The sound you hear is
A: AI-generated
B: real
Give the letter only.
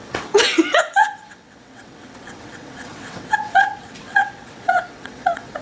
A